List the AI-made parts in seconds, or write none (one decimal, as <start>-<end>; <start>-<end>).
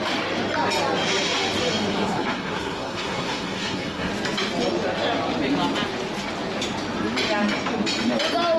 1.9-4.1